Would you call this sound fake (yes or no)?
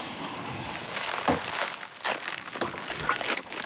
yes